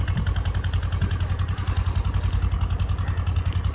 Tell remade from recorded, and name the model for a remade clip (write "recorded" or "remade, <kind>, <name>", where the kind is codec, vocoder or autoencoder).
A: recorded